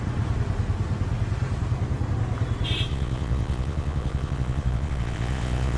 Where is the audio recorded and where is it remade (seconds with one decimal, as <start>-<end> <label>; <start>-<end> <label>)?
0.0-2.9 recorded; 2.9-5.8 remade